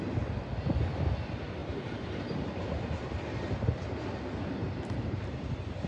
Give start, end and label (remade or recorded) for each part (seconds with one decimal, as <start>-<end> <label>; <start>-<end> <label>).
0.0-1.6 recorded; 1.6-3.2 remade; 3.2-4.6 recorded; 4.6-5.5 remade; 5.5-5.9 recorded